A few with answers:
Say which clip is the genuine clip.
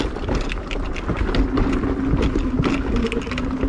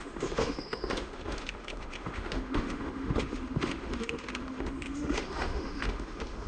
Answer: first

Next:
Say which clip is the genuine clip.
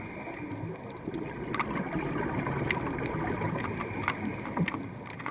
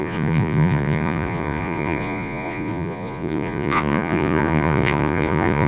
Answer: first